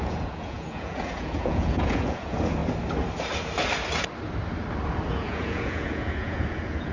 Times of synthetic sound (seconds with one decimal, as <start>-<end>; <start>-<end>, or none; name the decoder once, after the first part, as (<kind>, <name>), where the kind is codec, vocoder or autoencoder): 0.0-2.6 (vocoder, Vocos); 5.1-6.9